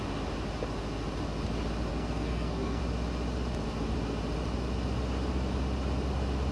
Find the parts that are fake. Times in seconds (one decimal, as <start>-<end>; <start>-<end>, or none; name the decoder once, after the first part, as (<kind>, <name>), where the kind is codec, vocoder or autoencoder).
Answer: 1.9-2.8 (codec, SNAC)

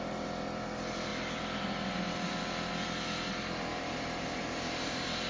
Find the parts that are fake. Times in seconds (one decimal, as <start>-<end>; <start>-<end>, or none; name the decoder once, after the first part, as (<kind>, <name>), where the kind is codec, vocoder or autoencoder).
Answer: 3.7-5.3 (vocoder, BigVGAN v2)

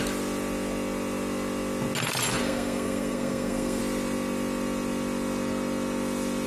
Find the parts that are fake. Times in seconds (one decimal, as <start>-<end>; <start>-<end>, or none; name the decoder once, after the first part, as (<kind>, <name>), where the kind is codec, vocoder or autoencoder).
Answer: 2.4-3.8 (codec, SNAC)

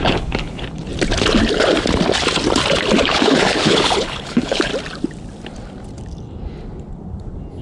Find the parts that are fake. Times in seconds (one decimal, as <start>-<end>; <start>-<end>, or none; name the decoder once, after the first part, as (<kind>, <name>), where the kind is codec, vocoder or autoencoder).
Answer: 0.0-0.9 (codec, HILCodec); 3.0-4.7

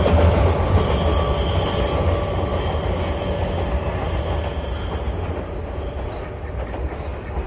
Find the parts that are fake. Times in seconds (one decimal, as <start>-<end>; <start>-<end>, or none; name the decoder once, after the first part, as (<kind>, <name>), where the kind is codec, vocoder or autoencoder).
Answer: none

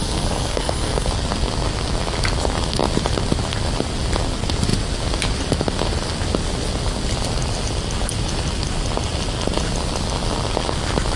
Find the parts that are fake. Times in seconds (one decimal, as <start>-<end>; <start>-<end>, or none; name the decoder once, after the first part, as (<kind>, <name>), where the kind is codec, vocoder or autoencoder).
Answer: 0.0-1.1 (codec, SNAC)